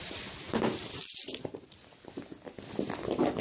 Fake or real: real